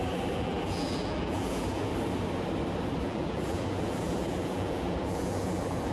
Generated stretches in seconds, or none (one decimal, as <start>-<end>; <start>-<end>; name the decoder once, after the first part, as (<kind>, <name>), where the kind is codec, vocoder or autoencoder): 0.0-1.9 (vocoder, BigVGAN v2); 3.0-5.9